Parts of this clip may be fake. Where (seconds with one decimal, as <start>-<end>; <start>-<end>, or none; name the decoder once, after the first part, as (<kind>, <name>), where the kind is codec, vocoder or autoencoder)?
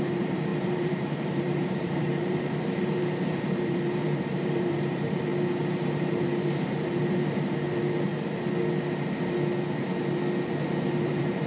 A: 0.0-5.3 (vocoder, BigVGAN v2); 5.8-8.1; 11.0-11.5